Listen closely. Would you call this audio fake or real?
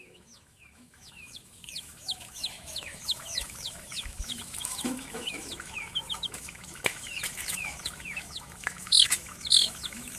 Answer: fake